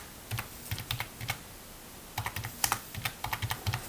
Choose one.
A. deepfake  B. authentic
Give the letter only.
B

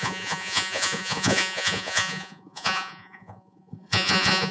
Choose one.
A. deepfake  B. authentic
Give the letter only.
A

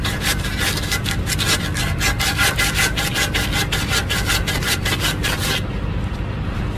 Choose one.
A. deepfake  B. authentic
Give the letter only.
B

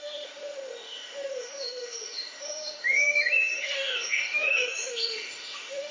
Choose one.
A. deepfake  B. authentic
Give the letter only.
A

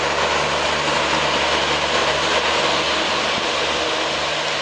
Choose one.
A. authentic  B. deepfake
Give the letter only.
A